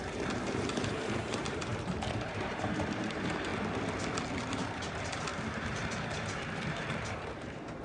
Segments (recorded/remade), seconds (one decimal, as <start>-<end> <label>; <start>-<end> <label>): 0.0-3.5 remade; 3.5-4.4 recorded; 4.4-7.8 remade